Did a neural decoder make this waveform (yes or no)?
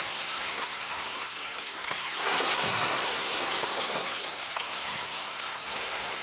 yes